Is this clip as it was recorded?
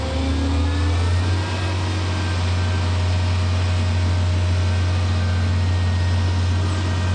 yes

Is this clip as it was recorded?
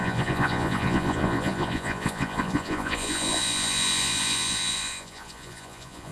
no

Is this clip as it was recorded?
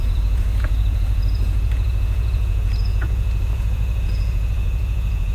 no